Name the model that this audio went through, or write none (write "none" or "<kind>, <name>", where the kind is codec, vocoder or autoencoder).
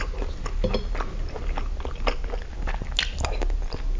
none